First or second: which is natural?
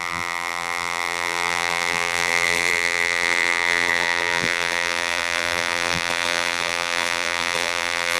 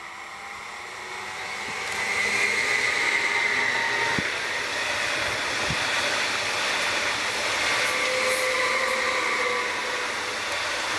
second